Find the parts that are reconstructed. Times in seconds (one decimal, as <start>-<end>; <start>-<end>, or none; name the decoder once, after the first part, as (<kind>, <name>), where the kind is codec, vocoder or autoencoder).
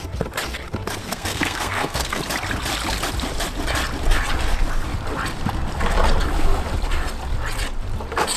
1.0-2.2 (codec, SNAC)